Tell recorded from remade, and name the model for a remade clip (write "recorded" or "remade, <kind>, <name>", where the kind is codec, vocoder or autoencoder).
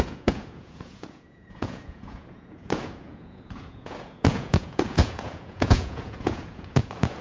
remade, vocoder, Vocos